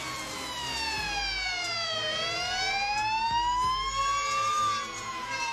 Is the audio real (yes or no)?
yes